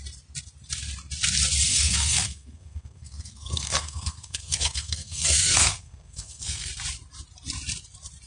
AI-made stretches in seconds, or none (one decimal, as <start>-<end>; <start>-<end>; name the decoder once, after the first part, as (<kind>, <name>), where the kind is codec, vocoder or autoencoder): 1.7-6.7 (codec, SNAC)